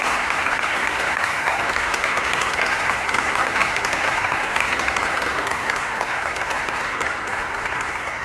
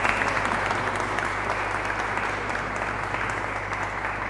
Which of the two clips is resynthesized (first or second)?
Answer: first